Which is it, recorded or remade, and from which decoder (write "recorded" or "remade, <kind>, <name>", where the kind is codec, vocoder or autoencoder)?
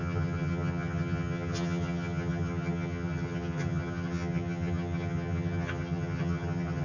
remade, vocoder, HiFi-GAN